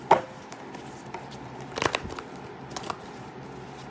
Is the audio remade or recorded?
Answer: recorded